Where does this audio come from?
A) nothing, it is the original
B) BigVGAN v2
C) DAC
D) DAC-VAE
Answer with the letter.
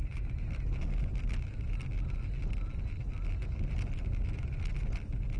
A